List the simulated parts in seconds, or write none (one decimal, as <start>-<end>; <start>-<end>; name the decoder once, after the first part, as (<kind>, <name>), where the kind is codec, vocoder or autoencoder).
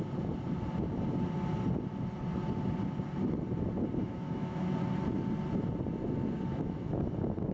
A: 4.0-4.6 (autoencoder, DAC-VAE); 6.5-7.0